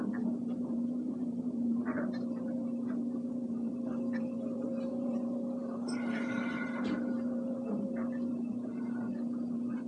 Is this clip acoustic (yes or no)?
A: no